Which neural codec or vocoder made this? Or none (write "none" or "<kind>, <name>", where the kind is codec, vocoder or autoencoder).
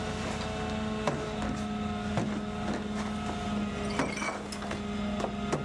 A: none